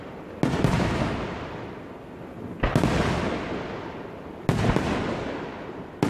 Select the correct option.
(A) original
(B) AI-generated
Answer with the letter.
A